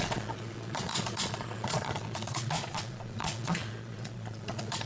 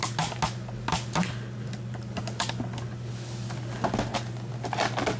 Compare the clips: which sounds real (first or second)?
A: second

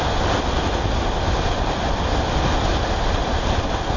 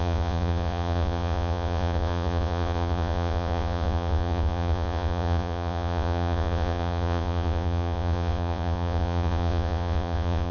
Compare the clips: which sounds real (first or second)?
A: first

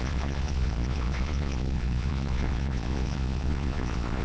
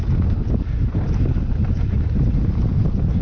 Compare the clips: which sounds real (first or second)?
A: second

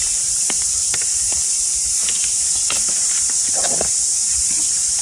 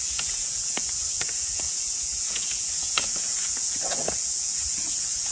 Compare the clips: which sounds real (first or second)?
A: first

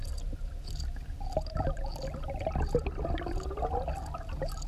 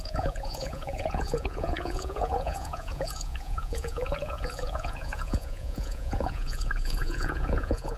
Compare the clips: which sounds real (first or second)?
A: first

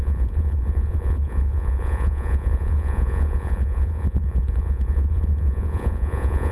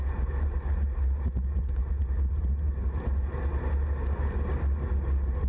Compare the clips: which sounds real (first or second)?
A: second